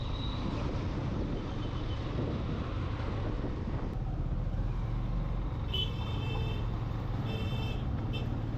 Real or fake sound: real